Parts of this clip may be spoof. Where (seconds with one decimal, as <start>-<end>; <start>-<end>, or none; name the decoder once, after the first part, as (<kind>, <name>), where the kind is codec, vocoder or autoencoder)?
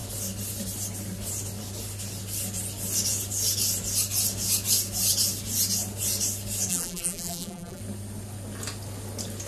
6.7-7.8 (vocoder, BigVGAN v2)